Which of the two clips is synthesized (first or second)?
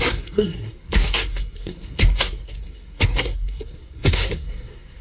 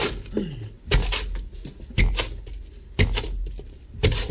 first